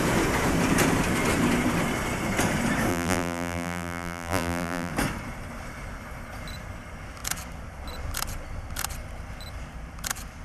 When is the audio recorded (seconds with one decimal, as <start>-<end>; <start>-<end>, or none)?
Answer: 0.0-2.9; 4.9-10.4